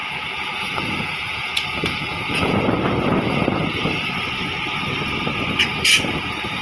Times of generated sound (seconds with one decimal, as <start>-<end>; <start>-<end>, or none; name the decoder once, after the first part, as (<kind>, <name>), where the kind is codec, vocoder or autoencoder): 0.0-2.6 (vocoder, Vocos)